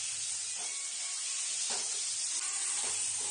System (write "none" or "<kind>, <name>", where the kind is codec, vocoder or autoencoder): none